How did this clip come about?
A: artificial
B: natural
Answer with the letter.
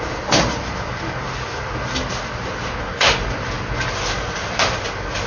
B